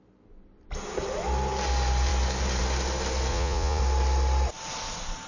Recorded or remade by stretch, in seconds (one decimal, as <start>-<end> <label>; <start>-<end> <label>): 0.0-3.3 recorded; 3.3-3.8 remade; 3.8-5.3 recorded